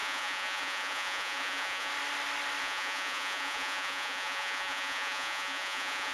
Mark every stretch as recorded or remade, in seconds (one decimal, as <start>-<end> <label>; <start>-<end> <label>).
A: 0.0-1.9 remade; 1.9-2.6 recorded; 2.6-6.1 remade